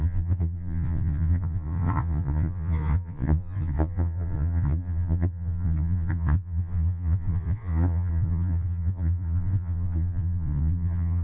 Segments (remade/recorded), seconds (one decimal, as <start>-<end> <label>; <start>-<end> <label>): 0.0-11.2 remade